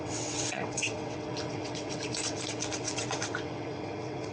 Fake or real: fake